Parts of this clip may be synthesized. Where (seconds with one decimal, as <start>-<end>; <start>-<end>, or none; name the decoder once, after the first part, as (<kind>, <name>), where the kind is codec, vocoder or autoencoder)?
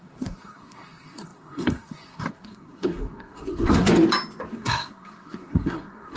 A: 0.0-3.9 (codec, SNAC); 4.5-6.2